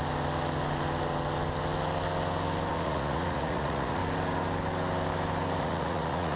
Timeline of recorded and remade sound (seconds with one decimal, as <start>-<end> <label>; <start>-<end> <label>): 0.0-2.7 recorded; 2.7-4.0 remade; 4.0-5.6 recorded; 5.6-6.4 remade